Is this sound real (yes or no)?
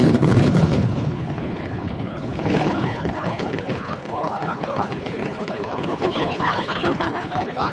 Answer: no